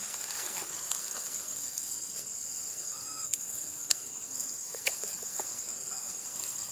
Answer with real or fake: fake